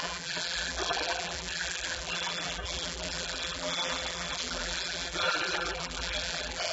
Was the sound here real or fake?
fake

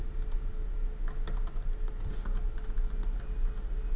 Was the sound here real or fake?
real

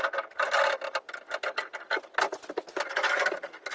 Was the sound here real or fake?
real